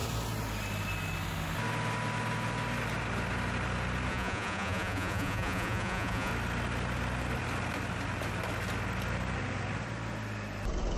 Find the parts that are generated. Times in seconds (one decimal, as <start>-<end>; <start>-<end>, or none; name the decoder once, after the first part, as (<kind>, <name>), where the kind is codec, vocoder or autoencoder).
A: 4.1-6.3 (vocoder, Vocos)